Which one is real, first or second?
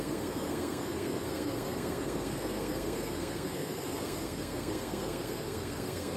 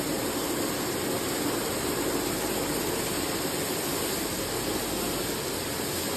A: second